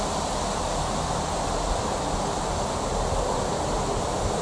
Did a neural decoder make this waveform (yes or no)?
no